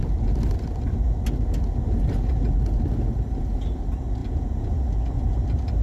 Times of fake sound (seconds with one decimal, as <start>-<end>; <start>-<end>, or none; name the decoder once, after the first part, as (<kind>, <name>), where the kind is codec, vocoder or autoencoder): 4.2-5.0 (vocoder, Vocos)